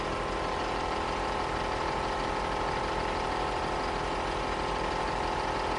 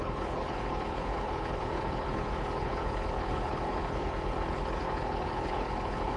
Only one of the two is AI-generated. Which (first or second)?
second